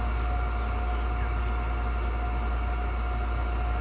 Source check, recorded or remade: recorded